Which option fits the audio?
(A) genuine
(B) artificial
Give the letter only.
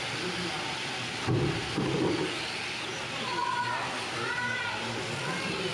A